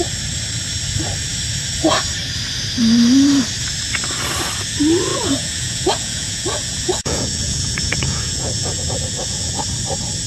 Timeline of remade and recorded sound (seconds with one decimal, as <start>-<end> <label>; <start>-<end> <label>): 0.0-5.1 recorded; 5.1-9.6 remade; 9.6-10.3 recorded